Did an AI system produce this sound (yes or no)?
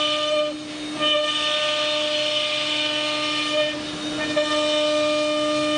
no